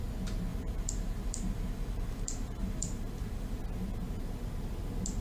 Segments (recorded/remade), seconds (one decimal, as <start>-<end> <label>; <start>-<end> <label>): 0.0-0.5 recorded; 0.5-3.6 remade; 3.6-5.2 recorded